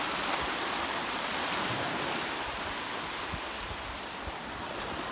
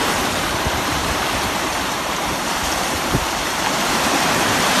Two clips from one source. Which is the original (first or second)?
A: first